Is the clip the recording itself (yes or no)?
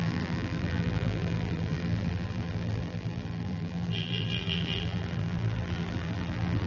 no